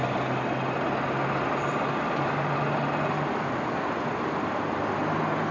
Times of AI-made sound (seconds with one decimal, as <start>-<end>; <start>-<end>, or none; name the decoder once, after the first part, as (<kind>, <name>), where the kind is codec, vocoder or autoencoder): none